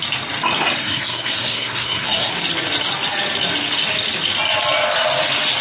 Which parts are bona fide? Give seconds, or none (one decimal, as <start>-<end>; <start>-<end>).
0.0-0.8; 2.3-5.6